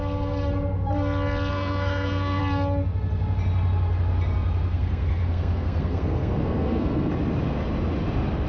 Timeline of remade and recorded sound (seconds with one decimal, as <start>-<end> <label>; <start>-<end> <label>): 0.0-1.5 recorded; 1.5-2.4 remade; 2.4-4.7 recorded; 4.7-7.1 remade; 7.1-8.5 recorded